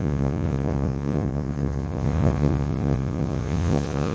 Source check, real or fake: fake